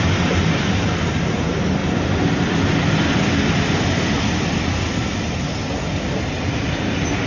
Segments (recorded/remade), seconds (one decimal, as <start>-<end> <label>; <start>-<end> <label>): 0.0-1.8 recorded; 1.8-2.4 remade; 2.4-7.3 recorded